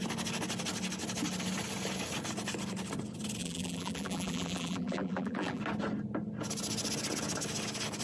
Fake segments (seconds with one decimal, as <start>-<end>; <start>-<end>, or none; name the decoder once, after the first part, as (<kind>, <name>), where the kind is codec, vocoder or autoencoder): 3.4-5.6 (vocoder, BigVGAN v2)